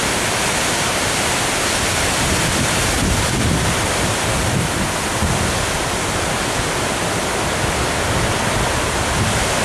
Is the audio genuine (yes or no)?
no